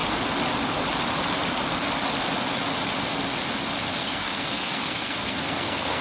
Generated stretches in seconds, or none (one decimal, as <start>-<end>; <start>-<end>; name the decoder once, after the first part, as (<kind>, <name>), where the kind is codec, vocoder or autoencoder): 4.0-6.0 (codec, SNAC)